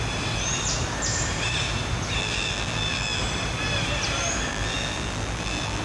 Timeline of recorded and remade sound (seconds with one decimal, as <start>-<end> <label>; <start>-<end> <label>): 0.0-2.2 recorded; 2.2-3.2 remade; 3.2-4.5 recorded; 4.5-5.8 remade